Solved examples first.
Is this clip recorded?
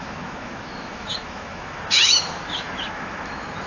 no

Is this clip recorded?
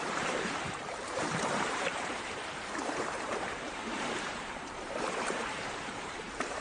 no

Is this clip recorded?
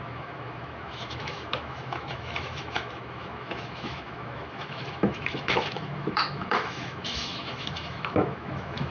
no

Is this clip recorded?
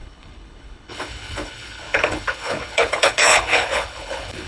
no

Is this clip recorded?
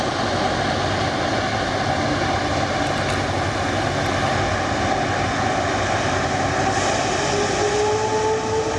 yes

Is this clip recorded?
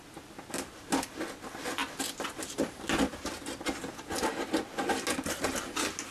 yes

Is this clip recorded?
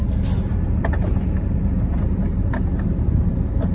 yes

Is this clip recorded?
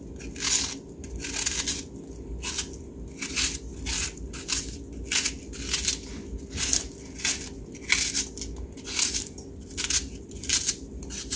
yes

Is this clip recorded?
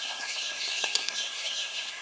no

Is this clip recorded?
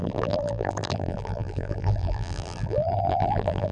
no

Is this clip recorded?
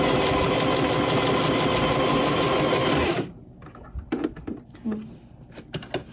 yes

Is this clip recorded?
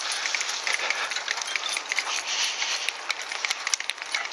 yes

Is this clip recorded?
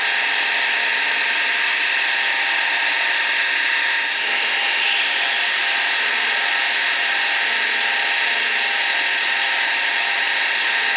yes